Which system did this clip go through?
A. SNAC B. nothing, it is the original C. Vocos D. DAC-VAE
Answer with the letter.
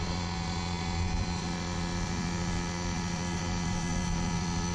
C